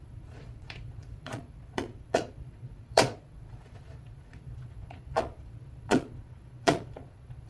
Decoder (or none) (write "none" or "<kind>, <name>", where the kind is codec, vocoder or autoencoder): vocoder, Vocos